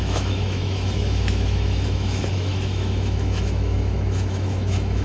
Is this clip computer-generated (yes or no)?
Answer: yes